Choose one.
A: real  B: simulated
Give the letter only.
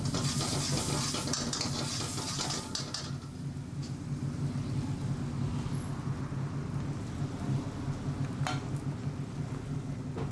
A